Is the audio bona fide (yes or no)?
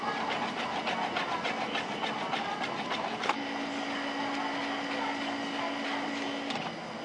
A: yes